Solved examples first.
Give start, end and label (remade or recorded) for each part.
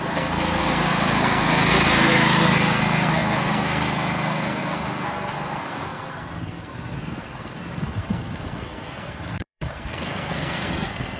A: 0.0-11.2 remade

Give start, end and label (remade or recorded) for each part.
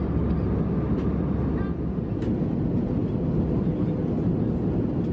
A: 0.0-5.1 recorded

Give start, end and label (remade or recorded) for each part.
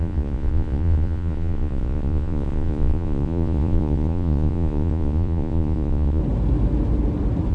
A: 0.0-6.2 remade; 6.2-7.5 recorded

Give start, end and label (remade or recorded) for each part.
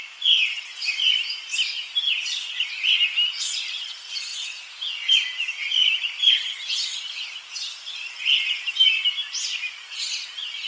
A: 0.0-10.7 recorded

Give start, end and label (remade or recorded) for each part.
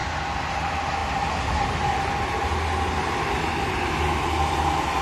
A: 0.0-5.0 recorded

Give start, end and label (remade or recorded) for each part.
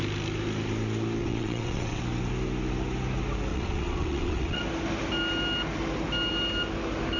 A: 0.0-1.2 recorded; 1.2-2.0 remade; 2.0-3.5 recorded; 3.5-4.6 remade; 4.6-7.2 recorded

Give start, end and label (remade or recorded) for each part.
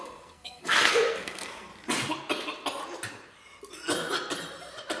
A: 0.0-1.7 remade; 1.7-5.0 recorded